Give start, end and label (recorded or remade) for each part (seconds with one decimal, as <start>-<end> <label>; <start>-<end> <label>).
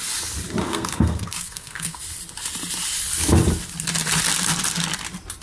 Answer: 0.0-0.6 recorded; 0.6-2.0 remade; 2.0-5.4 recorded